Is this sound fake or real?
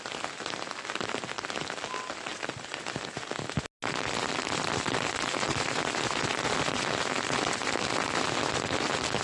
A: real